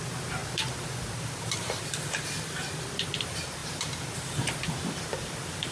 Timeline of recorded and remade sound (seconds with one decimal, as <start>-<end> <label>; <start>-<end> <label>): 0.0-0.4 recorded; 0.4-2.4 remade; 2.4-3.6 recorded; 3.6-5.7 remade

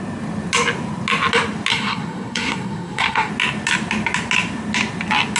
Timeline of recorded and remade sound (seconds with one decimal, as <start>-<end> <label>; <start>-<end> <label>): 0.0-1.7 recorded; 1.7-3.3 remade; 3.3-5.4 recorded

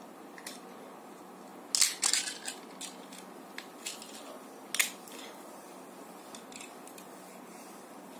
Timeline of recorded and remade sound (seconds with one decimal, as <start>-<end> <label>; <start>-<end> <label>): 0.0-8.2 recorded

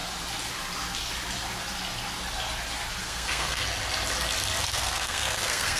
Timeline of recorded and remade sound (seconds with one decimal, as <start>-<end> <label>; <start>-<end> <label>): 0.0-3.0 recorded; 3.0-3.6 remade; 3.6-4.6 recorded; 4.6-5.8 remade

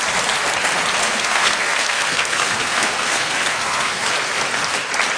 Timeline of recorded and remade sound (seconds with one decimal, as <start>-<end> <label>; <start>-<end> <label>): 0.0-1.0 recorded; 1.0-4.1 remade; 4.1-5.2 recorded

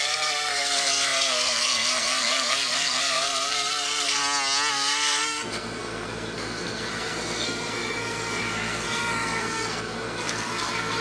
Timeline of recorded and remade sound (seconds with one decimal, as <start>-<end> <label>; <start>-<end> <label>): 0.0-4.2 remade; 4.2-4.7 recorded; 4.7-11.0 remade

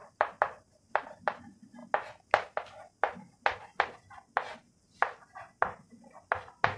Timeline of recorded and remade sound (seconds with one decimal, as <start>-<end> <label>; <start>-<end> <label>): 0.0-1.4 remade; 1.4-4.6 recorded; 4.6-5.6 remade; 5.6-6.8 recorded